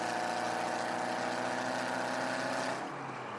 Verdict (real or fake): real